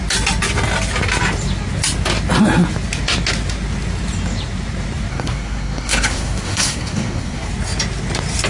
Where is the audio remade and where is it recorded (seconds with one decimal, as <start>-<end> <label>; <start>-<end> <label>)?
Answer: 0.0-5.1 recorded; 5.1-7.5 remade; 7.5-8.5 recorded